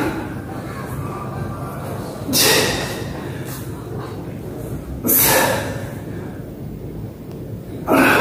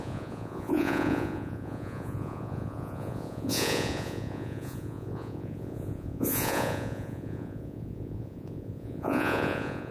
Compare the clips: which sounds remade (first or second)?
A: second